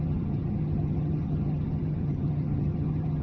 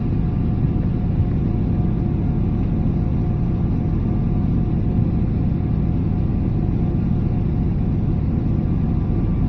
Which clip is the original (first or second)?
second